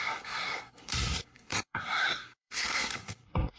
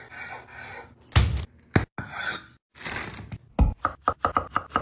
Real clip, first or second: second